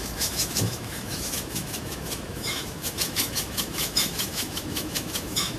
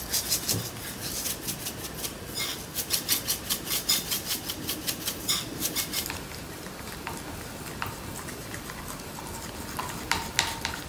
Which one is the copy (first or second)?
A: first